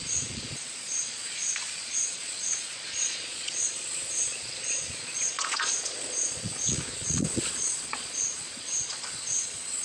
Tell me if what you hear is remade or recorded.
remade